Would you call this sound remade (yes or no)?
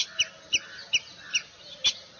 no